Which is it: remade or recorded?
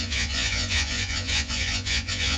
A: remade